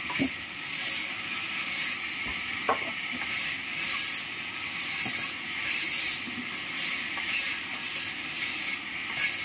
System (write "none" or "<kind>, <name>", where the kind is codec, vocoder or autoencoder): none